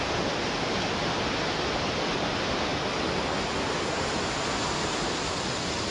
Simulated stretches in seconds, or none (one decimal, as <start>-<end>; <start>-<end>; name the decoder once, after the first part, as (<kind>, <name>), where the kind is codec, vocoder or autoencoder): none